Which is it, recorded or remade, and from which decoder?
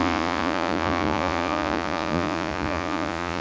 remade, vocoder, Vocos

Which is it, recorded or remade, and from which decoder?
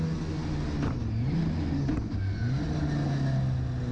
recorded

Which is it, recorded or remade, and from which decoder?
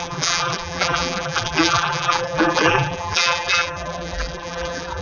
remade, vocoder, BigVGAN v2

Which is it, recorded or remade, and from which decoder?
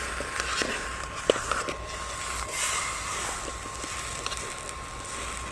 recorded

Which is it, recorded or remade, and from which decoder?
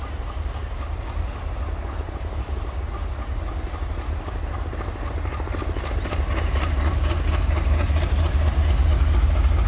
recorded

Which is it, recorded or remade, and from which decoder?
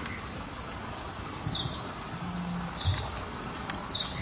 recorded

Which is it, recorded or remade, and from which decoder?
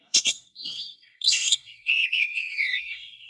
remade, codec, SNAC